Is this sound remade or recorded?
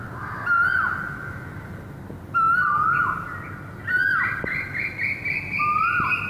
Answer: recorded